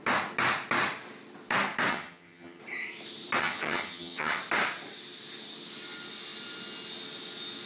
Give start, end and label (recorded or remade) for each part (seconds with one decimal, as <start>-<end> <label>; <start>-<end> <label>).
0.0-1.9 recorded; 1.9-2.6 remade; 2.6-3.4 recorded; 3.4-4.4 remade; 4.4-7.7 recorded